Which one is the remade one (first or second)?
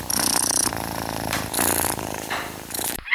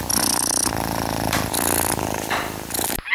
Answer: first